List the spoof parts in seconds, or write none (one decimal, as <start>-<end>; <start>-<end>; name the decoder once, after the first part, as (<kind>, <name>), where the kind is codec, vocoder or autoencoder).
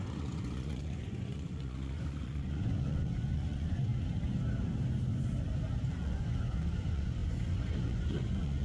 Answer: 0.0-3.9 (vocoder, Vocos); 5.9-8.6